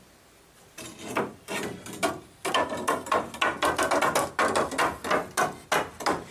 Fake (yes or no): no